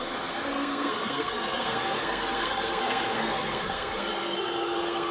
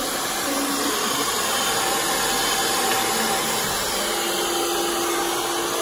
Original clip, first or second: second